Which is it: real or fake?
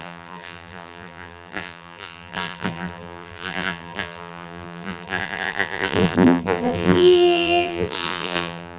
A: fake